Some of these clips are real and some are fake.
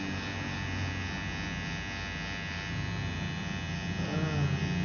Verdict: real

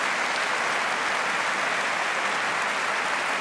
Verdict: real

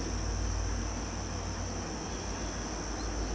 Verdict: real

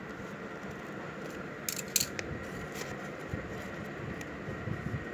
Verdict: real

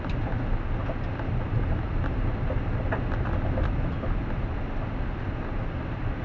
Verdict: real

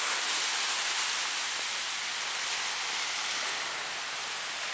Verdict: real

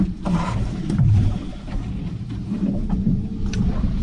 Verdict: fake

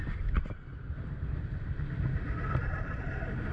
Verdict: real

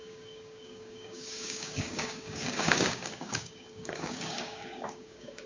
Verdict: fake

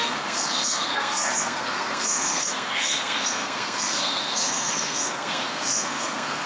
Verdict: fake